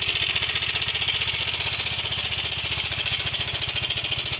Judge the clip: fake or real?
real